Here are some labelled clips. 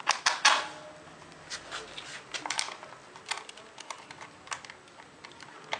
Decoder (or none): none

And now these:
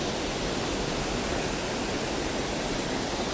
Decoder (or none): none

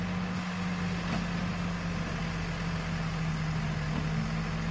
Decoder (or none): none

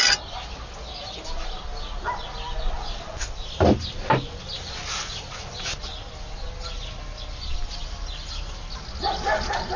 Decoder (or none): none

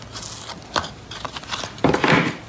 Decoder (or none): none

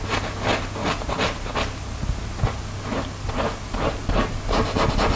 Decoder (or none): none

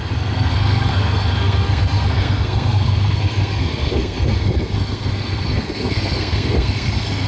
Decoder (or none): codec, SNAC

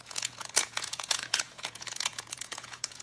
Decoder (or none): vocoder, Vocos